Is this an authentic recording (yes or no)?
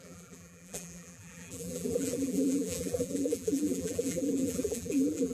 no